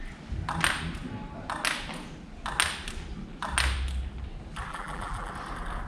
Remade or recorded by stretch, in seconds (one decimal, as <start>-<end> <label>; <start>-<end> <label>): 0.0-4.7 recorded; 4.7-5.3 remade; 5.3-5.9 recorded

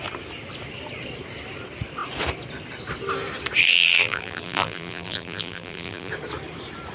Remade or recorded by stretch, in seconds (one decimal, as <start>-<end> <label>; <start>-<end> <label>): 0.0-3.6 recorded; 3.6-6.1 remade; 6.1-6.9 recorded

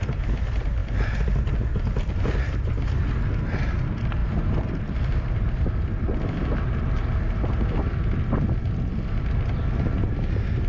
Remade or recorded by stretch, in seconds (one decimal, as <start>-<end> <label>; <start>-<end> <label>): 0.0-4.2 recorded; 4.2-5.4 remade; 5.4-10.7 recorded

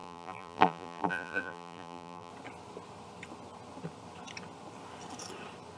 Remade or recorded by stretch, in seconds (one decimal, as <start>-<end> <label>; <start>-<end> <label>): 0.0-2.3 remade; 2.3-5.8 recorded

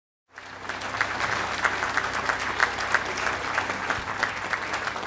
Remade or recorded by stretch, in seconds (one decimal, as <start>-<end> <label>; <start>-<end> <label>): 0.0-5.1 recorded